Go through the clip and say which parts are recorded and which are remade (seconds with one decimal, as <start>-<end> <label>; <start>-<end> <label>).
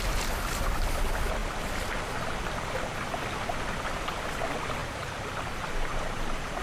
0.0-4.8 recorded; 4.8-6.6 remade